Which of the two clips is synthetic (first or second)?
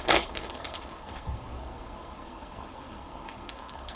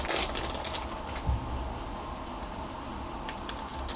first